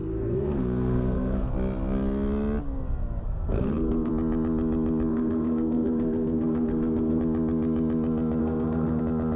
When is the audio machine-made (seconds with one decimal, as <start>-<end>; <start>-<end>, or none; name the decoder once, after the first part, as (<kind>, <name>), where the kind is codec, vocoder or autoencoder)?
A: 0.0-1.5 (codec, SNAC); 3.2-4.1; 5.1-7.2; 8.4-9.0

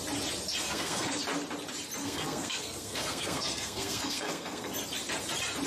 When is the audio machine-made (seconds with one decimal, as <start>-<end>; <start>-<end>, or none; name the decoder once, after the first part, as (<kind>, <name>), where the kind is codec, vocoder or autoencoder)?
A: 0.6-1.2 (codec, SNAC); 2.0-4.7